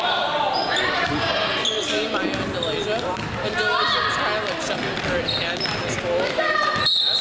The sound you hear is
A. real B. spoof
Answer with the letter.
A